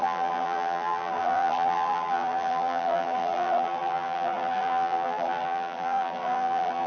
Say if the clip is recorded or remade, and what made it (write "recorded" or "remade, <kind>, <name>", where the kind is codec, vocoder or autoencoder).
remade, vocoder, BigVGAN v2